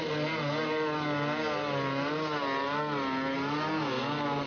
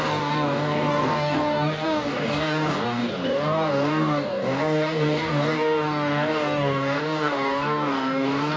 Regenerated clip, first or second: second